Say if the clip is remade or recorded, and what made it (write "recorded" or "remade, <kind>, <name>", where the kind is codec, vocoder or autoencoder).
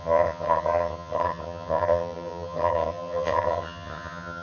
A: remade, vocoder, HiFi-GAN